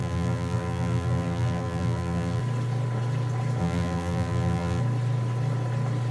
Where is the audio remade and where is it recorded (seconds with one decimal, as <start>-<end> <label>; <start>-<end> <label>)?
0.0-2.4 remade; 2.4-3.6 recorded; 3.6-4.8 remade; 4.8-6.1 recorded